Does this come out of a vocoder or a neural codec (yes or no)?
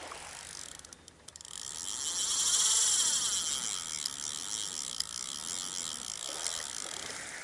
no